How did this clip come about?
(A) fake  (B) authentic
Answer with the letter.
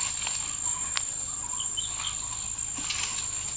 B